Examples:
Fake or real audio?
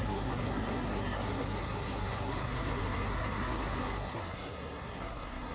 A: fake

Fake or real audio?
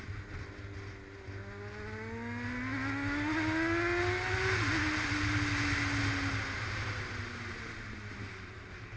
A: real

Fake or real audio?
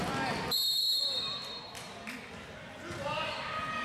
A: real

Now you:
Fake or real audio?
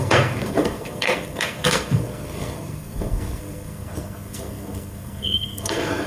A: fake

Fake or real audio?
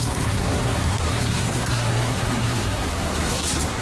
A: fake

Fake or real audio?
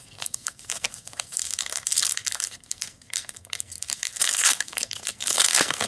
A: fake